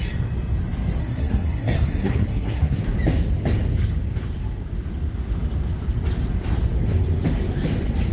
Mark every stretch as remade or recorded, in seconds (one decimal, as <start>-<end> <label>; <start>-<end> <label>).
0.0-1.0 recorded; 1.0-2.8 remade; 2.8-8.1 recorded